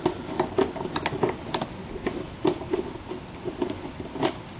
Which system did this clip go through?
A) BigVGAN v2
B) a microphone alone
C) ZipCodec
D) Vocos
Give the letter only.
B